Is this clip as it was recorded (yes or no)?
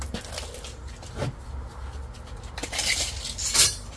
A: yes